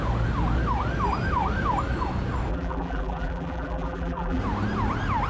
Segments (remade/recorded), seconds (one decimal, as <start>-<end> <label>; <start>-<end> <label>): 0.0-2.5 recorded; 2.5-4.4 remade; 4.4-5.3 recorded